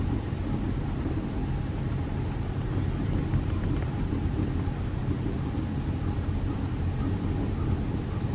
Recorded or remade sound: recorded